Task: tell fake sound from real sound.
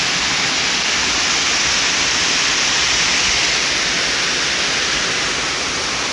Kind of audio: real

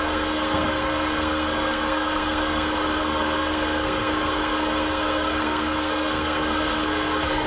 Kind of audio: fake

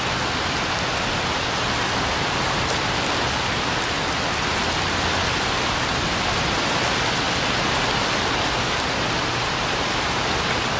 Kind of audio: real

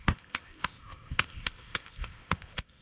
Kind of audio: fake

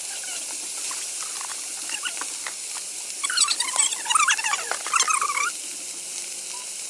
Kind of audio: real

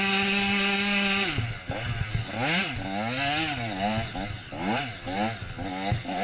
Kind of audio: real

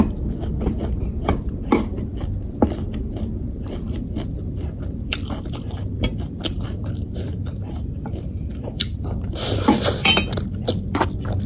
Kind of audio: fake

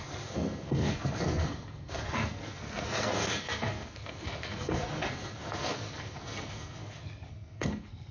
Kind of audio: fake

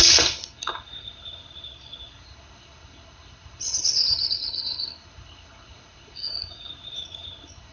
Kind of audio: fake